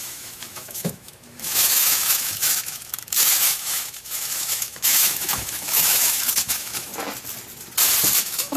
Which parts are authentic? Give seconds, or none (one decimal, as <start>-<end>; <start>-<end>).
6.9-8.2